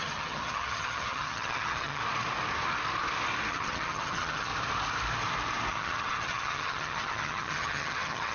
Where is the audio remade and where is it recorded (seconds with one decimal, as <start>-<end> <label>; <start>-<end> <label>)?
0.0-2.0 remade; 2.0-3.5 recorded; 3.5-4.5 remade; 4.5-5.7 recorded; 5.7-8.3 remade